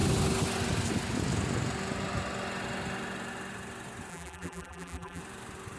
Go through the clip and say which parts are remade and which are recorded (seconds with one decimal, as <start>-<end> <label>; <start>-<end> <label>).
0.0-4.1 recorded; 4.1-5.2 remade; 5.2-5.8 recorded